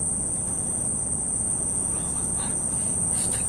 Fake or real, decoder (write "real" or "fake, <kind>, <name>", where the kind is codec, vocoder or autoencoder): real